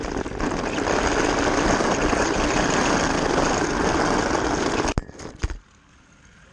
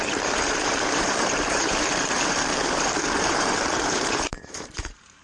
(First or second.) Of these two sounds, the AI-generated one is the second